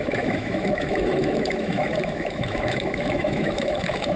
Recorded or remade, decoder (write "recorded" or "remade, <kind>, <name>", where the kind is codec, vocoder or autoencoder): remade, autoencoder, DAC-VAE